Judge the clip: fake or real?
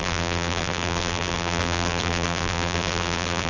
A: fake